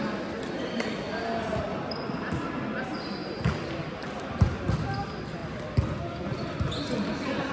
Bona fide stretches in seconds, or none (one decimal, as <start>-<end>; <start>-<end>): 0.0-3.2; 4.5-7.5